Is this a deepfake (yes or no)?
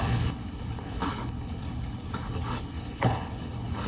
yes